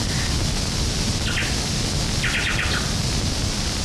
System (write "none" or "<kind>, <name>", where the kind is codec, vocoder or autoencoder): none